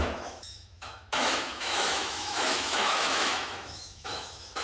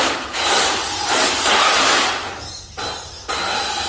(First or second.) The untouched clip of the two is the second